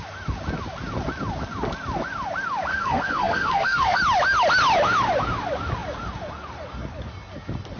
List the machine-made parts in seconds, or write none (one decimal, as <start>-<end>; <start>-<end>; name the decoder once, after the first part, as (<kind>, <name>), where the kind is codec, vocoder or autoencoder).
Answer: 2.7-4.0 (codec, SNAC)